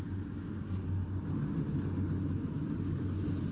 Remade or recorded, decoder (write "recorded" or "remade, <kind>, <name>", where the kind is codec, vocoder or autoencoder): recorded